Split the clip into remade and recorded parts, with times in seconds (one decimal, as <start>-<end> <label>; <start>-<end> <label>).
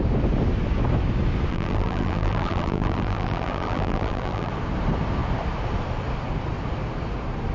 0.0-1.5 recorded; 1.5-4.5 remade; 4.5-7.5 recorded